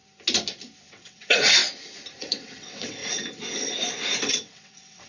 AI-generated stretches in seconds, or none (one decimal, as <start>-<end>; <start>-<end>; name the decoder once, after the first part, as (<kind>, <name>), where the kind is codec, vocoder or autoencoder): 0.9-1.6 (vocoder, WaveNeXt); 2.2-3.0; 4.3-5.1